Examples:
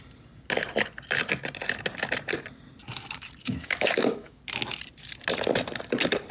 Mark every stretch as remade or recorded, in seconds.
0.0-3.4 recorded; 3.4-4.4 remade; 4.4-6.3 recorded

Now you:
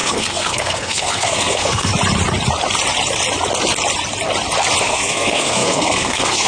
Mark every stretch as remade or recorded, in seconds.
0.0-1.9 remade; 1.9-4.8 recorded; 4.8-6.5 remade

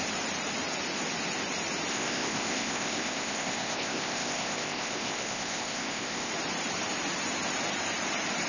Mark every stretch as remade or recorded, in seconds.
0.0-1.9 recorded; 1.9-6.3 remade; 6.3-8.5 recorded